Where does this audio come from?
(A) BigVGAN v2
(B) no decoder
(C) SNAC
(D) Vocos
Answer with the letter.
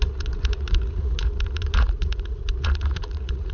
D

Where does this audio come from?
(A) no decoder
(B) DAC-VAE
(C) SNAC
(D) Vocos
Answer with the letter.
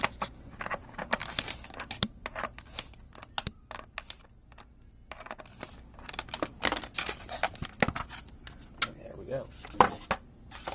A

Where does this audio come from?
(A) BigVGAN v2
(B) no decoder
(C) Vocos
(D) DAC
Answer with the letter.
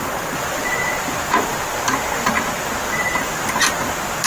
B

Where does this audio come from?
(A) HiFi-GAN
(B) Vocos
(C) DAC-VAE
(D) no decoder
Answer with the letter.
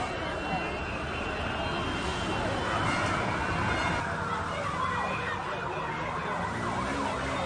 D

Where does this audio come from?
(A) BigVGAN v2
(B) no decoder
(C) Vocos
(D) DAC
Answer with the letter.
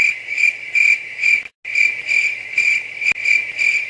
B